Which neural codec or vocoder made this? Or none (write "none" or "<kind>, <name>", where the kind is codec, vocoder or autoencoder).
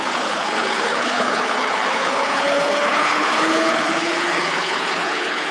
codec, HILCodec